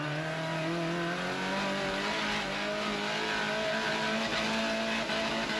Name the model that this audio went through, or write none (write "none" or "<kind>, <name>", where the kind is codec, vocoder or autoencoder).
none